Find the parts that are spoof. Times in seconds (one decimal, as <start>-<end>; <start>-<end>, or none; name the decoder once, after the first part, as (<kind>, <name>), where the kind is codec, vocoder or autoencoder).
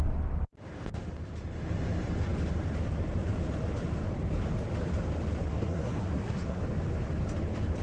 5.4-6.6 (codec, SNAC)